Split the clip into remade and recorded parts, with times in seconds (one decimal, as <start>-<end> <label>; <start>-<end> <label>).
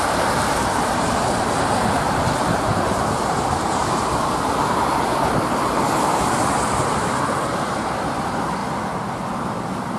0.0-8.6 remade; 8.6-10.0 recorded